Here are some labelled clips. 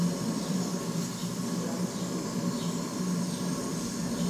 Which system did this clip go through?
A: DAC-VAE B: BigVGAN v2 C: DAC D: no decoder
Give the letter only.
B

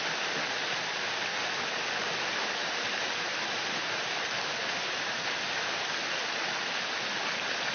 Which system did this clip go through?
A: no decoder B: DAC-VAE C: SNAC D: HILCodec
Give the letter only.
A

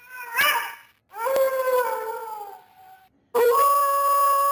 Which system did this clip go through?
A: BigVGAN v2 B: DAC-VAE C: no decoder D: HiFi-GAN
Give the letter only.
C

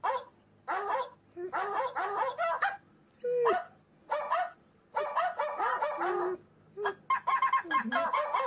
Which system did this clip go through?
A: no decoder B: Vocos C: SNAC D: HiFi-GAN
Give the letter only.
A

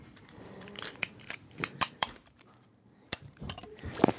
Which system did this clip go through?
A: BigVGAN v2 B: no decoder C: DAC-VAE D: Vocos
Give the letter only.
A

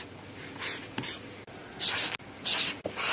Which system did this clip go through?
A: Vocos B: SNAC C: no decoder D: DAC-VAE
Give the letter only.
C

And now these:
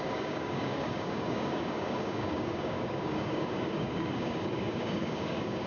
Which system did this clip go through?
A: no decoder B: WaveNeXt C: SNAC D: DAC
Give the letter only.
D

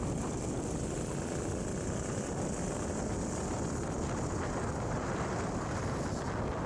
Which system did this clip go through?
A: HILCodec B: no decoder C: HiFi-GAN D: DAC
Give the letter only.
B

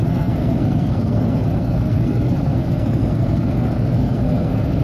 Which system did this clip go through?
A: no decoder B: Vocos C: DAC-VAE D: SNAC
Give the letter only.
D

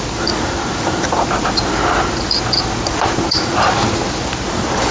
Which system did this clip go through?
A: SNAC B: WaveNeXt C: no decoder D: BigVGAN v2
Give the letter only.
D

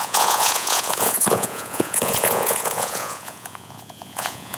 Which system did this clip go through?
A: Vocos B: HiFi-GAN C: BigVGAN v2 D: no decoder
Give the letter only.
A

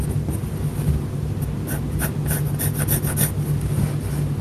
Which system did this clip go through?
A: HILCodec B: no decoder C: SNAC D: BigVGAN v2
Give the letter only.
B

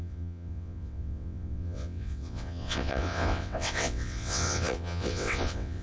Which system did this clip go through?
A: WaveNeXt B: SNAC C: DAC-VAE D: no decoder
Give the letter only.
A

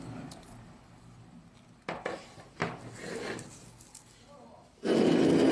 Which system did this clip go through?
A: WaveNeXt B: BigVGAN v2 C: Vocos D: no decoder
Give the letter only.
D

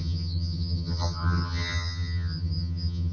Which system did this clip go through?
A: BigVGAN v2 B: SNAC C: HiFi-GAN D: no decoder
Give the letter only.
C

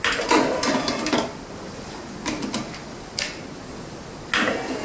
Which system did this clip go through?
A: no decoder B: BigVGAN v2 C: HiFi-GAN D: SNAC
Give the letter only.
A